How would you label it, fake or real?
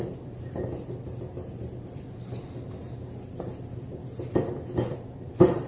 real